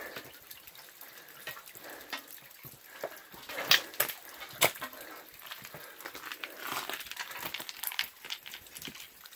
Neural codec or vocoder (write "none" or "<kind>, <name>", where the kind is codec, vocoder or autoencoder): none